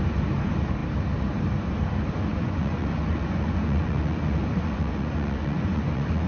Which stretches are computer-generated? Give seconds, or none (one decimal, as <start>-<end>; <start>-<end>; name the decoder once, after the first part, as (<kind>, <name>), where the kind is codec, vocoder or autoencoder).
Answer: 2.3-6.3 (vocoder, Vocos)